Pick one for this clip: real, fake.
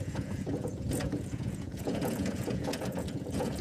fake